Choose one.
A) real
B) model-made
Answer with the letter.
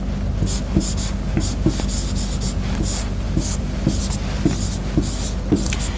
A